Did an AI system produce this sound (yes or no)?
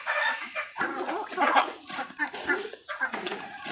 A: yes